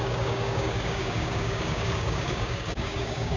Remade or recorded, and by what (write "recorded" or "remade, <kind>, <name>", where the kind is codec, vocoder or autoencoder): remade, codec, DAC